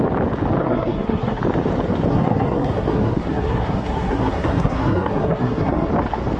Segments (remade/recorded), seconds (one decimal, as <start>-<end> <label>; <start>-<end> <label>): 0.0-0.6 recorded; 0.6-1.4 remade; 1.4-2.1 recorded; 2.1-5.9 remade; 5.9-6.4 recorded